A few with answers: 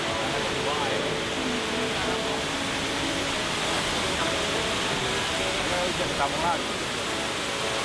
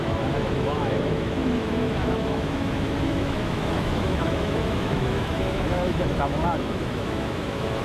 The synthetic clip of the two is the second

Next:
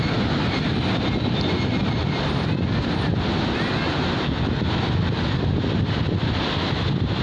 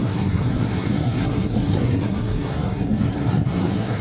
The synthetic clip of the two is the second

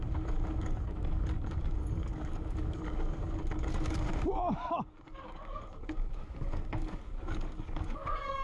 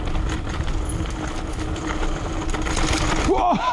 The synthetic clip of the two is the first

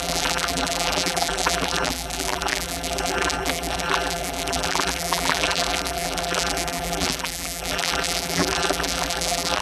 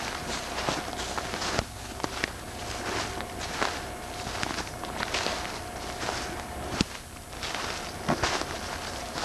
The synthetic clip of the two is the first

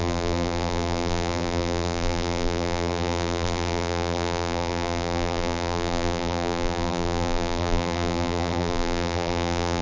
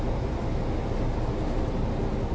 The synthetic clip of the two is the first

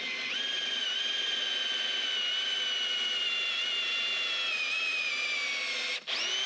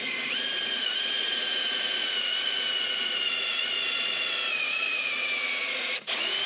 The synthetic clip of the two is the second